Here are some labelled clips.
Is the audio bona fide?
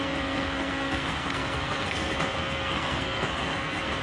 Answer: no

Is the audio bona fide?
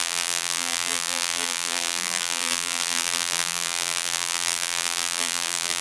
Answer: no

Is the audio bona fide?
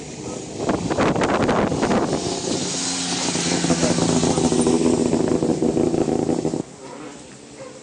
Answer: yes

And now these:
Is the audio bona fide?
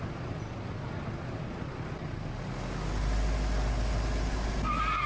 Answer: yes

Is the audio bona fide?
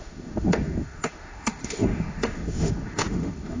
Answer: no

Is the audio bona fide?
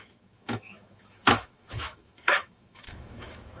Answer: no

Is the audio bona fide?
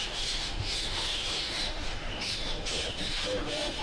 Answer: no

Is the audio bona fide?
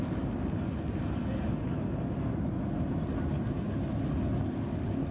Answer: yes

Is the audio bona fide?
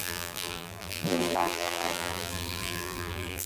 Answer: no